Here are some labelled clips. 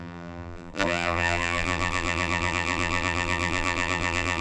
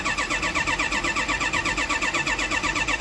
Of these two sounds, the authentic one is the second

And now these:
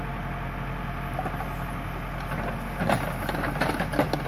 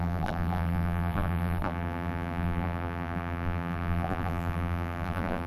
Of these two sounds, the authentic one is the first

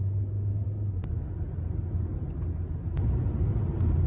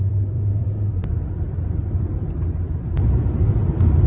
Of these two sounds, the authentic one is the first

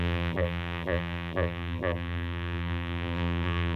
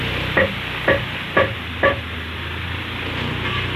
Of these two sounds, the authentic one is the second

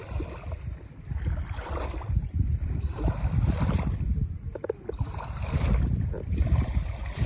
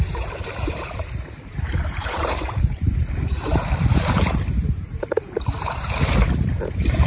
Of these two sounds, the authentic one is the first